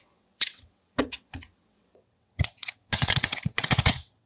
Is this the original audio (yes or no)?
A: no